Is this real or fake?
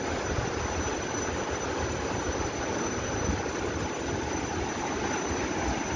real